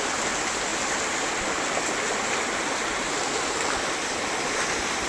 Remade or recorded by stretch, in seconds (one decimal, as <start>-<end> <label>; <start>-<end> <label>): 0.0-5.1 recorded